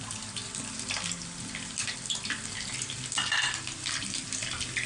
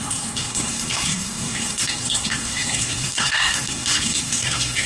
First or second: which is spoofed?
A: second